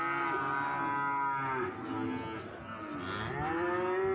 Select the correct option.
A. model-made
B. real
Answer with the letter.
B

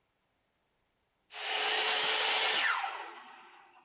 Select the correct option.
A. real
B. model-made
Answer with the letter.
B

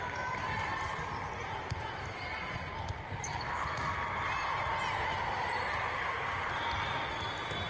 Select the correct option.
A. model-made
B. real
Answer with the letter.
B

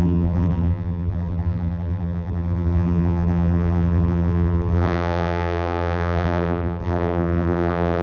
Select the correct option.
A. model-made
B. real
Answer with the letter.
A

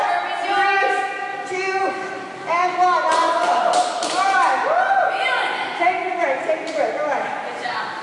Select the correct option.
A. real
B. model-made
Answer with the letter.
A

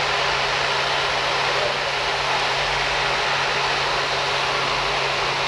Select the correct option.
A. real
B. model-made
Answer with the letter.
A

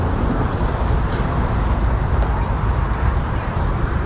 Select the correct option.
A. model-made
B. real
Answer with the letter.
A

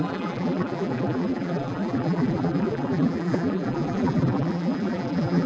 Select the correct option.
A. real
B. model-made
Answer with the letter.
B